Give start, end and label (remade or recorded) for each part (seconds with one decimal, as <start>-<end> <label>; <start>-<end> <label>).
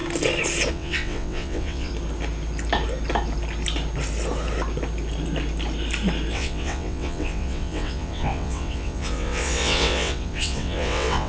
0.0-0.7 recorded; 0.7-1.9 remade; 1.9-6.3 recorded; 6.3-11.3 remade